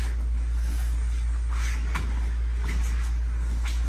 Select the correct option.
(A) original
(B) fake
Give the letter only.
B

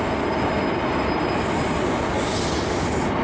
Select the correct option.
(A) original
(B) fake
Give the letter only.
A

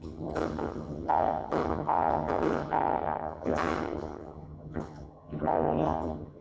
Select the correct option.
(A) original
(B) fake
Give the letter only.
B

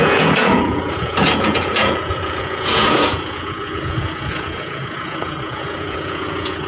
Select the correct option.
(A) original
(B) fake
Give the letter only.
B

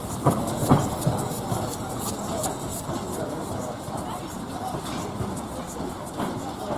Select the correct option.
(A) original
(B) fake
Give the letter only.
A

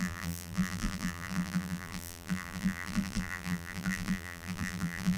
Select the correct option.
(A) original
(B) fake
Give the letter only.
B